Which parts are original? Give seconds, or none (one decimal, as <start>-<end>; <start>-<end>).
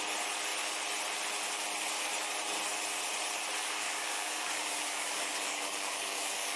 0.0-3.6